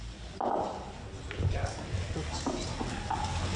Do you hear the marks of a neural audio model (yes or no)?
no